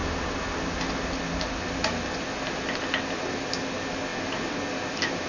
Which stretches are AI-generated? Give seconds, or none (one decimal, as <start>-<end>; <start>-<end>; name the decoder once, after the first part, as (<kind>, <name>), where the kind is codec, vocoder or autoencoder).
none